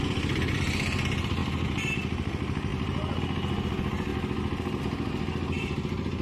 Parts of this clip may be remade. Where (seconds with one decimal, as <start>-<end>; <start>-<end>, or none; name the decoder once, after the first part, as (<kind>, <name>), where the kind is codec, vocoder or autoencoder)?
none